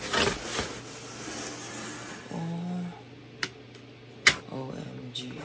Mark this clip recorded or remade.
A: recorded